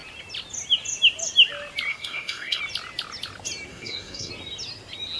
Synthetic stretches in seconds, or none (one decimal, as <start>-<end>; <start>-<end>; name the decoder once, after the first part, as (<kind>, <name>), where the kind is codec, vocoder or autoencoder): 1.9-2.6 (codec, SNAC); 3.7-4.3